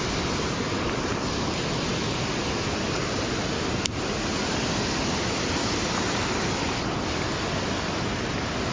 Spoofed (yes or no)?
no